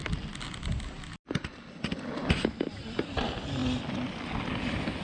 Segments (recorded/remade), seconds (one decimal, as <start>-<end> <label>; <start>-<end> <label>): 0.0-5.0 recorded